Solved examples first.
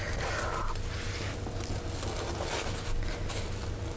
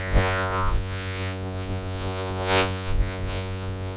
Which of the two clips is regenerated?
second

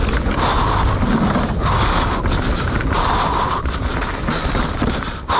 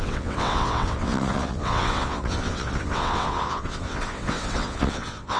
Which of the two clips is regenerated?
second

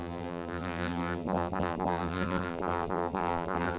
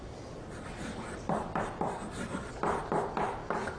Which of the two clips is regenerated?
first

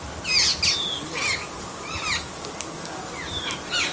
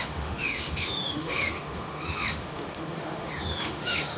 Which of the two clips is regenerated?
second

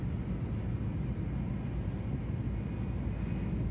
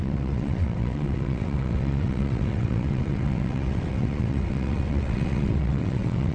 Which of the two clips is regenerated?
second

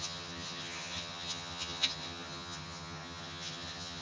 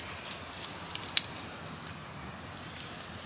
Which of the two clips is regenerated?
first